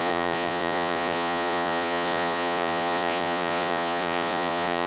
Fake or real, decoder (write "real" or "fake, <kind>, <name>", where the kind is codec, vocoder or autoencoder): fake, vocoder, Vocos